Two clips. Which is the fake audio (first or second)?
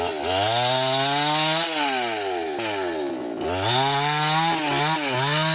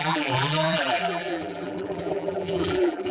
second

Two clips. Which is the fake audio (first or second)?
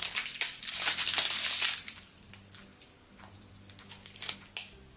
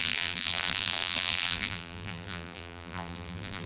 second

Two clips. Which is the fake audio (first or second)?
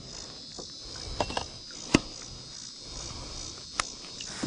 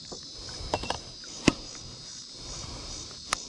second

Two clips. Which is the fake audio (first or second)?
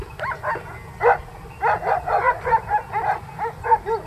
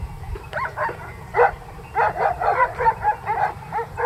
second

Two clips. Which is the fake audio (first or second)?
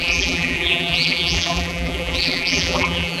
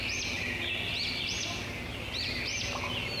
first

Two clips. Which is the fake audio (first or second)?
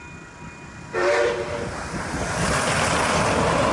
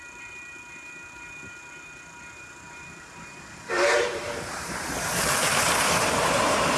second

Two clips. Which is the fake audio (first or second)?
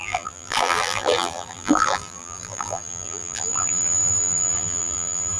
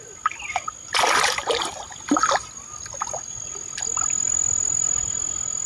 first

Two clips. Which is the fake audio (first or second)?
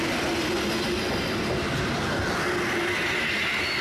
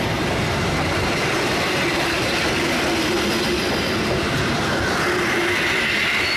second